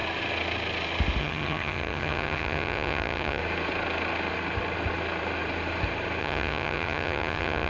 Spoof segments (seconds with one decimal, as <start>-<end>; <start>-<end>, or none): 1.2-3.4; 6.2-7.7